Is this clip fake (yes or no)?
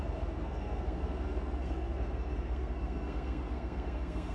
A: yes